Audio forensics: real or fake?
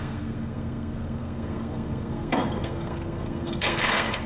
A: fake